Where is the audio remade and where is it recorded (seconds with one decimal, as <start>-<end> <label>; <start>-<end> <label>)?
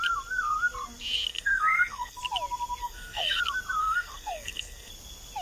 0.0-1.3 recorded; 1.3-2.2 remade; 2.2-2.8 recorded; 2.8-3.4 remade; 3.4-3.8 recorded; 3.8-4.9 remade; 4.9-5.4 recorded